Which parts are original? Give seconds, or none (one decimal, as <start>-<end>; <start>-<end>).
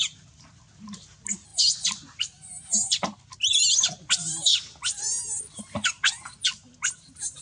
0.0-7.4